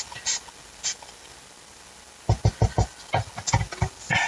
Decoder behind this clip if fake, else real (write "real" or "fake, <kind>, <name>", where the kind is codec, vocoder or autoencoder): real